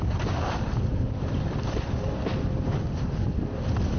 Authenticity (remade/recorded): recorded